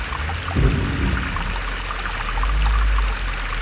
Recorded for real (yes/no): yes